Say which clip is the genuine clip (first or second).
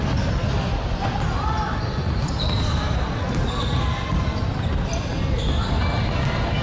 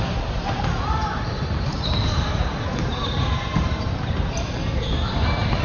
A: first